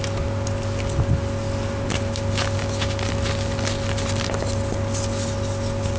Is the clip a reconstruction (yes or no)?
no